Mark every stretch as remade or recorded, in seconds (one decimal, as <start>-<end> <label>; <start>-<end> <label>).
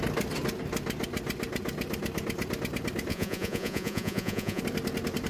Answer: 0.0-3.1 recorded; 3.1-4.6 remade; 4.6-5.3 recorded